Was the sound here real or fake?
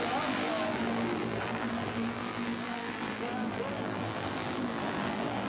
fake